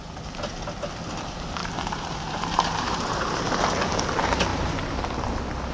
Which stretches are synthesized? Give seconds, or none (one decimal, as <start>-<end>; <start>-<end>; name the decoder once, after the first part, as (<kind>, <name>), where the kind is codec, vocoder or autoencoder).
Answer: 1.6-3.3 (vocoder, BigVGAN v2); 4.5-5.0